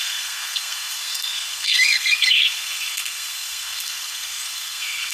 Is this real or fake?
fake